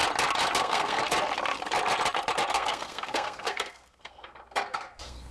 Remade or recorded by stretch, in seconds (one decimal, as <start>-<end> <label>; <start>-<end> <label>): 0.0-0.6 recorded; 0.6-1.0 remade; 1.0-2.5 recorded; 2.5-5.3 remade